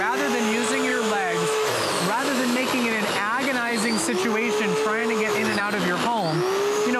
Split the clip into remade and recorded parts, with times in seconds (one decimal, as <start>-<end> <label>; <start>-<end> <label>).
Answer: 0.0-0.9 recorded; 0.9-2.6 remade; 2.6-3.7 recorded; 3.7-4.2 remade; 4.2-5.0 recorded; 5.0-5.6 remade; 5.6-7.0 recorded